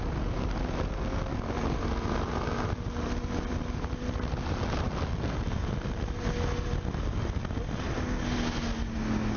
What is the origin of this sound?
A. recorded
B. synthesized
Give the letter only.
A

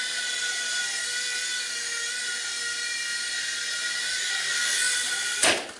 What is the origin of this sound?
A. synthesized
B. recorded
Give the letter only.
B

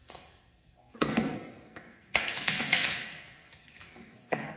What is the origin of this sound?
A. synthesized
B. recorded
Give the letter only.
A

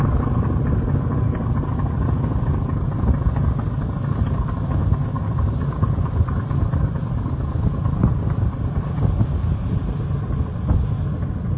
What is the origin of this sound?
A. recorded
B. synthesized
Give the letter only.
A